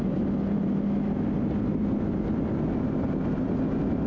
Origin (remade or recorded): recorded